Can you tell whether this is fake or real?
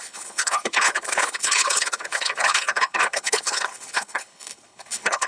fake